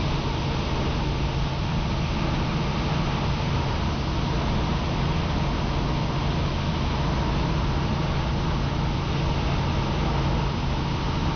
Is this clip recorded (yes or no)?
yes